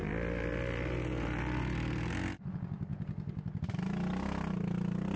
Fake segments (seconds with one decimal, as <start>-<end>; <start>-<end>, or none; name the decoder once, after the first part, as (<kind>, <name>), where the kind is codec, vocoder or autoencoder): none